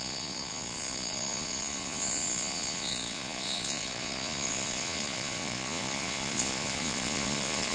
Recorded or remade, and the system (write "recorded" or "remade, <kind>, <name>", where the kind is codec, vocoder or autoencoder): remade, vocoder, Vocos